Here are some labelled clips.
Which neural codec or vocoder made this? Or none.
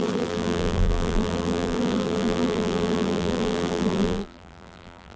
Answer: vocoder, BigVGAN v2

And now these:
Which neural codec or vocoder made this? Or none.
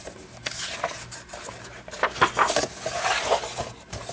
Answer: none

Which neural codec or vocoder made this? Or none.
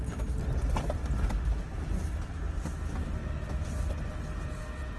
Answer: none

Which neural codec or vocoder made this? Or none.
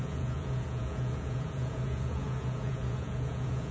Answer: vocoder, Vocos